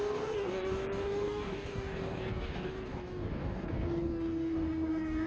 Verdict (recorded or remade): remade